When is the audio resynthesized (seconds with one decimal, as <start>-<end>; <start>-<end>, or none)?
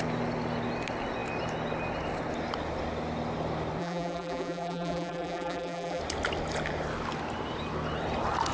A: 3.8-6.0